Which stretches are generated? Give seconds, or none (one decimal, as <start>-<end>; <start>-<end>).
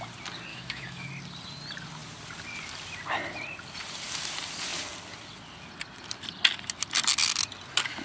0.5-1.1